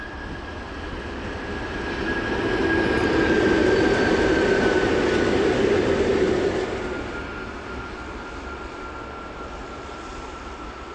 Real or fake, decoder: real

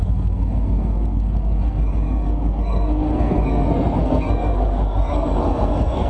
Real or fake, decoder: fake, codec, SNAC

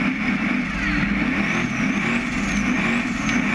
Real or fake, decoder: real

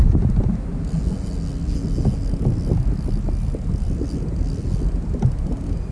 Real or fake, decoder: real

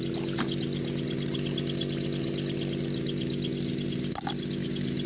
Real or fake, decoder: real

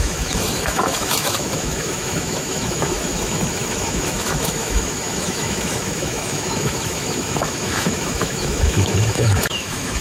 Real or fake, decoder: fake, autoencoder, DAC-VAE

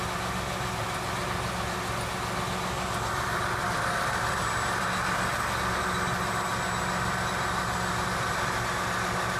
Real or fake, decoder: real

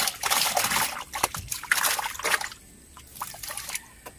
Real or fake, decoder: real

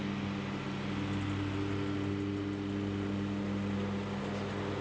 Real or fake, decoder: real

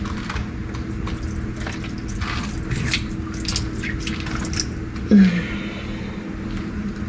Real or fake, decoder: real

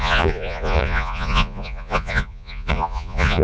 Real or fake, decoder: fake, vocoder, Vocos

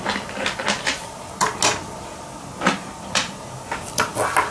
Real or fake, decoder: real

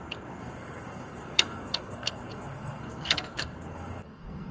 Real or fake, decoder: fake, codec, SNAC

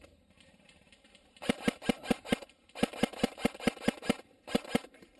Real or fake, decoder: fake, vocoder, BigVGAN v2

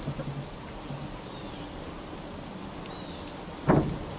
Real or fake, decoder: real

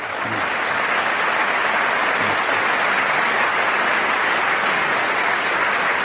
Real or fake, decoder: real